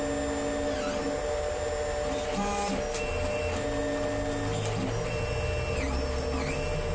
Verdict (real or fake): real